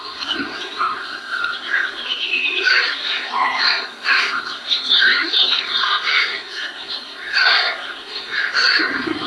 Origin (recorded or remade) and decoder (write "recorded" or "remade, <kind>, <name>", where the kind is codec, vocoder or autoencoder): remade, codec, SNAC